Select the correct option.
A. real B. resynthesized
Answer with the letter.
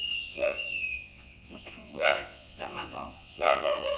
B